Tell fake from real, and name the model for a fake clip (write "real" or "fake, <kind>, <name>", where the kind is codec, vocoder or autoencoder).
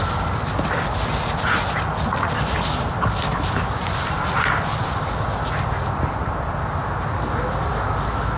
real